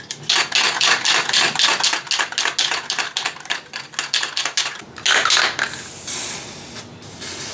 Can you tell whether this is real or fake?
real